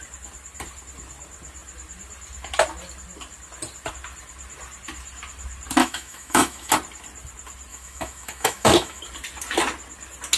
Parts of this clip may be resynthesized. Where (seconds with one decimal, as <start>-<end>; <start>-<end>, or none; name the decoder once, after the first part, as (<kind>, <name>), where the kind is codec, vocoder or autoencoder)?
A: 5.8-6.7 (autoencoder, DAC-VAE); 7.7-9.0